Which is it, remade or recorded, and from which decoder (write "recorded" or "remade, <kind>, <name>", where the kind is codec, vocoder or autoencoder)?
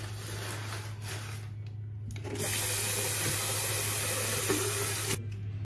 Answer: recorded